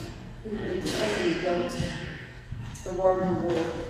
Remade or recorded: remade